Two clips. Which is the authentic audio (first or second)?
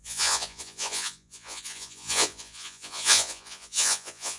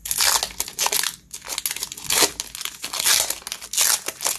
second